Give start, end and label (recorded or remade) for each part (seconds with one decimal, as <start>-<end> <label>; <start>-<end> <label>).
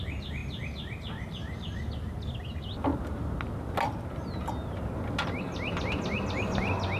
0.0-0.4 recorded; 0.4-2.2 remade; 2.2-7.0 recorded